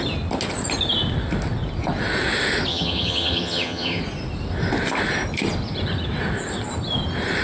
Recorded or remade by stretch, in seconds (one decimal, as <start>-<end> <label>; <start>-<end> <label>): 0.0-2.7 recorded; 2.7-4.0 remade; 4.0-7.4 recorded